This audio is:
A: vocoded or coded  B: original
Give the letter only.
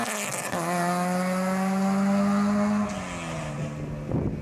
B